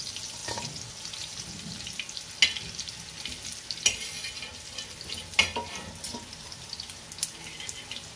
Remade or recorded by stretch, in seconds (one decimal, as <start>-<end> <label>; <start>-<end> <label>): 0.0-8.2 recorded